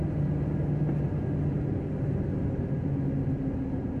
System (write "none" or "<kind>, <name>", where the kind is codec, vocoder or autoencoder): none